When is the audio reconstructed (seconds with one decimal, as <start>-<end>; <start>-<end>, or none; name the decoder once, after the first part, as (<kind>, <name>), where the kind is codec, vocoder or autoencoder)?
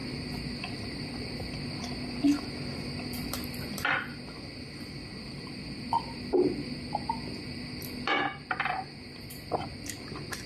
none